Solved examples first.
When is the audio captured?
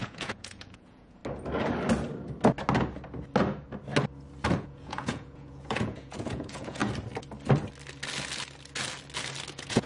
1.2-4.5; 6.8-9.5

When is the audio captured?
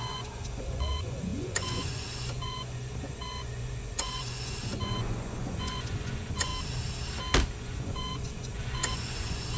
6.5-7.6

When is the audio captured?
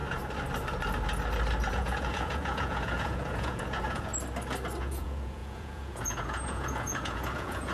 0.0-1.7; 4.1-4.8